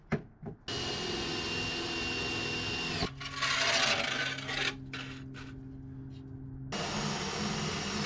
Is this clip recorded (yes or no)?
yes